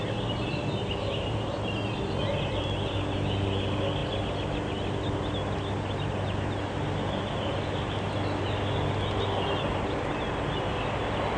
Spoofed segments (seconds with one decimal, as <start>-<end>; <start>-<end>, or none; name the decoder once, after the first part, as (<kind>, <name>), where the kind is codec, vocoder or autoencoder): none